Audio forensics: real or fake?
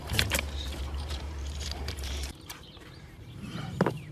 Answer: fake